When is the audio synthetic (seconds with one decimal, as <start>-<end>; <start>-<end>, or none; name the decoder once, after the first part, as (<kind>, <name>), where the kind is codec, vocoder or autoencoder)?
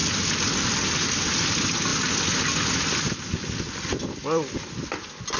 0.0-1.2 (vocoder, BigVGAN v2)